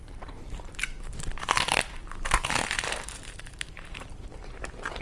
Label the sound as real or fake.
fake